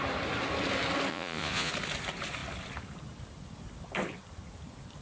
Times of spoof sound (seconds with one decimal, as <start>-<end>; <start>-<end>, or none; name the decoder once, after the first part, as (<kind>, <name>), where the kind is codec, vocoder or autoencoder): 1.1-1.7 (vocoder, Vocos)